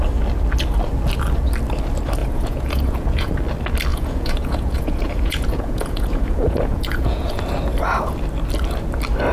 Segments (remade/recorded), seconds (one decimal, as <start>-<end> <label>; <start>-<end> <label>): 0.0-2.2 recorded; 2.2-3.3 remade; 3.3-3.9 recorded; 3.9-7.4 remade; 7.4-9.3 recorded